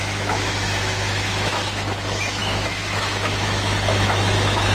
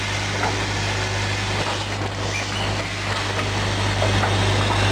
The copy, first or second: first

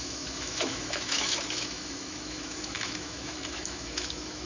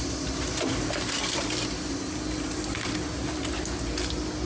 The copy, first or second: first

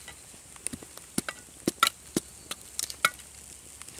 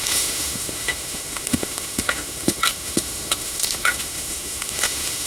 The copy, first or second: second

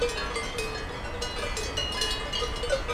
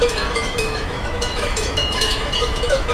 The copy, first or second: second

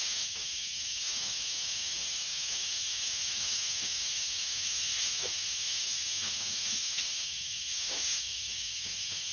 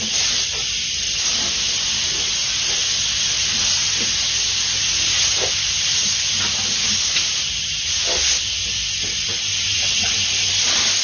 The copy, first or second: first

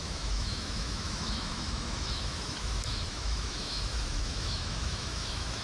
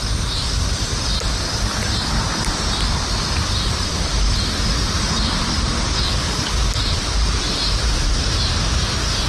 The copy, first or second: first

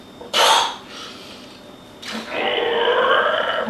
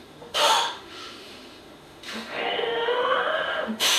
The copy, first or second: second